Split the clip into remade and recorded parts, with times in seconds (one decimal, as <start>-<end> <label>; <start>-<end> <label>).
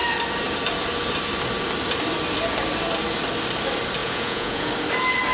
0.0-4.0 recorded; 4.0-4.7 remade; 4.7-5.3 recorded